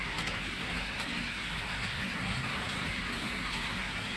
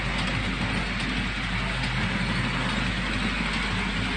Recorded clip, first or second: second